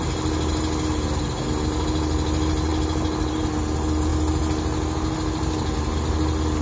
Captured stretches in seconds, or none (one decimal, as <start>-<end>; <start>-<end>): 0.0-6.6